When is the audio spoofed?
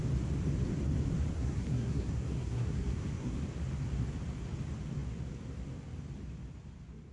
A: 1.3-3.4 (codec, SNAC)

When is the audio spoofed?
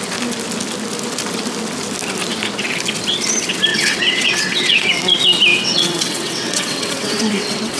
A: 3.7-4.9 (vocoder, WaveNeXt); 5.5-7.8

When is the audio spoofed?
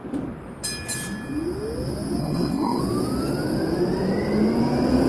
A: 2.2-2.8 (codec, SNAC)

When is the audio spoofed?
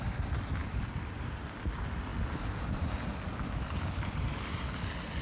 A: none